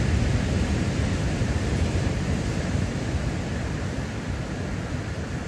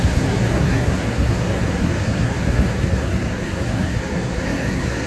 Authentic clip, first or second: first